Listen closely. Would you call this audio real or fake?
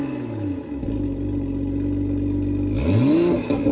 real